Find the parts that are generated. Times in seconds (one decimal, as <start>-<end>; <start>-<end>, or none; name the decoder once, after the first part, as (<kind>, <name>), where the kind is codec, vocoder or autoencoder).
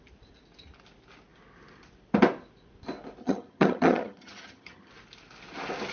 3.2-4.9 (vocoder, HiFi-GAN)